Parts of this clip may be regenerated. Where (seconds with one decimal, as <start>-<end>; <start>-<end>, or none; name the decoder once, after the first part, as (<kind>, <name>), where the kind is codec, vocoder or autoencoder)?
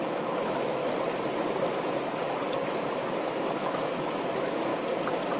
0.0-0.8 (autoencoder, DAC-VAE); 3.4-4.7